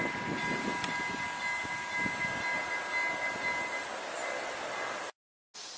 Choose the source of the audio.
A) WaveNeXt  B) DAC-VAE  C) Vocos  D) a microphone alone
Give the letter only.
D